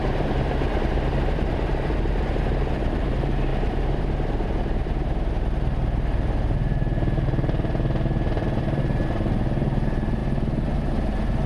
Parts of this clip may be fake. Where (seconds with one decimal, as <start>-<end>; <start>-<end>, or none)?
0.0-11.5